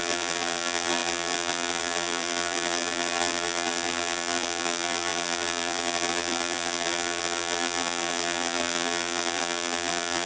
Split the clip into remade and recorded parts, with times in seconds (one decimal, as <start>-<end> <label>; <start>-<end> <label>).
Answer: 0.0-10.3 remade